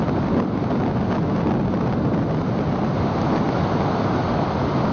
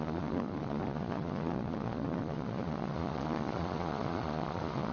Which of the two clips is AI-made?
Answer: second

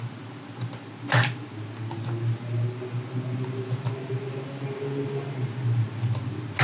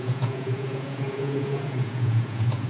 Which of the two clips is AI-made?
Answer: second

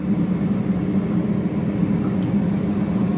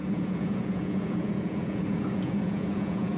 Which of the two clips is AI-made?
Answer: second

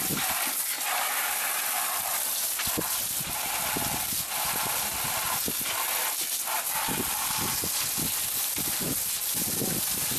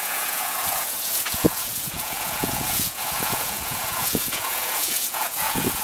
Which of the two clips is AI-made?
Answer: second